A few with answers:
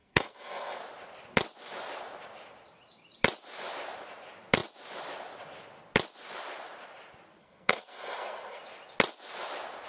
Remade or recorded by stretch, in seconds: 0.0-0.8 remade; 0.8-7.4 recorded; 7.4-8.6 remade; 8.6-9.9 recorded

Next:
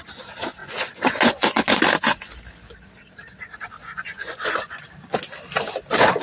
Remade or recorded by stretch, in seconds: 0.0-0.6 recorded; 0.6-1.8 remade; 1.8-3.8 recorded; 3.8-4.8 remade; 4.8-6.2 recorded

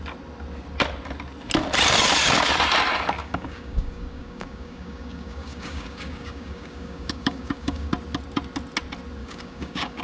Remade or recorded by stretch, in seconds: 0.0-3.2 recorded; 3.2-7.9 remade; 7.9-9.2 recorded; 9.2-10.0 remade

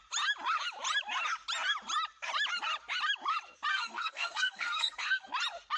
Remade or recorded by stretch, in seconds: 0.0-3.7 recorded; 3.7-5.3 remade; 5.3-5.8 recorded

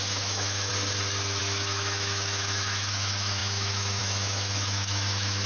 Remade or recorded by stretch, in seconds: 0.0-0.7 remade; 0.7-1.4 recorded; 1.4-5.5 remade

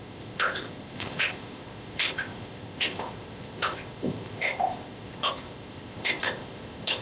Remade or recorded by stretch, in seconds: 0.0-7.0 remade

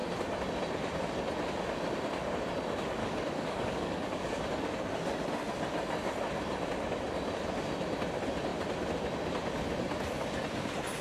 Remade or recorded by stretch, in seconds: 0.0-3.0 recorded; 3.0-4.4 remade; 4.4-11.0 recorded

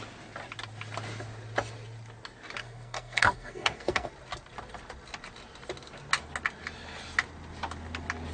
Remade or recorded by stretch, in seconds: 0.0-2.6 recorded; 2.6-4.1 remade; 4.1-8.3 recorded